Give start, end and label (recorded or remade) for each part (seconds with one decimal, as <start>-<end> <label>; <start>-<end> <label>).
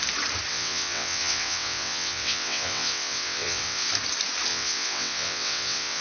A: 0.0-0.5 recorded; 0.5-3.9 remade; 3.9-4.5 recorded; 4.5-6.0 remade